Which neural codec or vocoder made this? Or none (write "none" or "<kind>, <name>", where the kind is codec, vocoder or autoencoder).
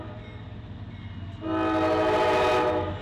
none